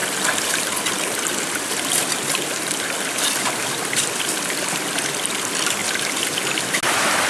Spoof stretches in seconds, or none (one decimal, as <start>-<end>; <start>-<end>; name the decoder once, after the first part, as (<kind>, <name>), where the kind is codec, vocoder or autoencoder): none